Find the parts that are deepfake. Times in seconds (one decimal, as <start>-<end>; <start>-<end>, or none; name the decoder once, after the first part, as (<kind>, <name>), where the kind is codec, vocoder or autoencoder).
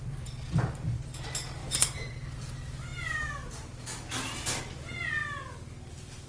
1.6-2.1 (vocoder, BigVGAN v2); 5.2-6.3